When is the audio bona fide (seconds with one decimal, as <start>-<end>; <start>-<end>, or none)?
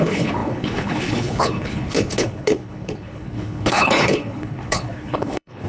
none